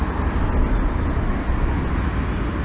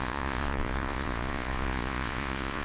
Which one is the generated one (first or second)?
second